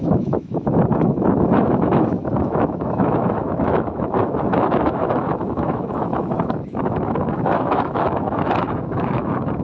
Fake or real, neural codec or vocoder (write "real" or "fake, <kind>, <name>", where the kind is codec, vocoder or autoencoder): fake, autoencoder, DAC-VAE